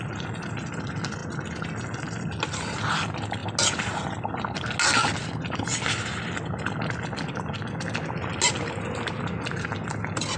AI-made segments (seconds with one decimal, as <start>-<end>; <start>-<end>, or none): none